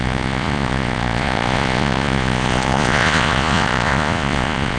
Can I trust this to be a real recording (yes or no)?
no